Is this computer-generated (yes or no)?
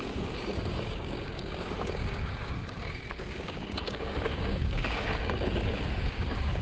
yes